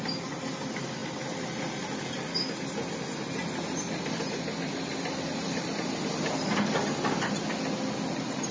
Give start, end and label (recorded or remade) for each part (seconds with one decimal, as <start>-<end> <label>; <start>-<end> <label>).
0.0-8.5 recorded